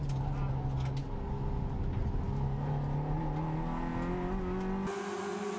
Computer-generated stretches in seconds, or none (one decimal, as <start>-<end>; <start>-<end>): none